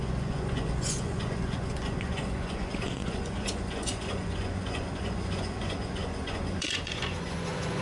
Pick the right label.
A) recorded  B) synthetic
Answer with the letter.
B